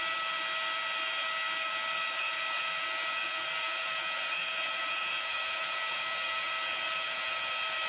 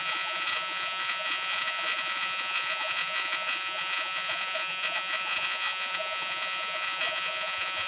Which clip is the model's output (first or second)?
second